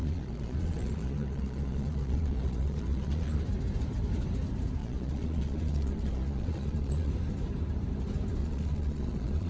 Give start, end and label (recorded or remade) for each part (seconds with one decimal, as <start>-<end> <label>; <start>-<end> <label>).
0.0-3.4 remade; 3.4-4.8 recorded; 4.8-7.1 remade; 7.1-8.4 recorded; 8.4-9.5 remade